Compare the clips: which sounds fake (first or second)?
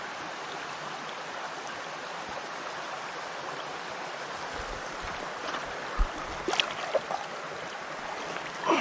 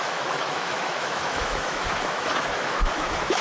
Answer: second